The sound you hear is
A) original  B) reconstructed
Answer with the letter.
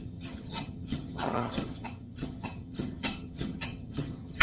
B